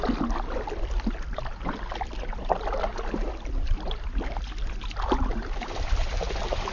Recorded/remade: remade